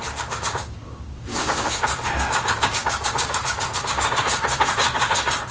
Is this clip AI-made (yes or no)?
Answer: yes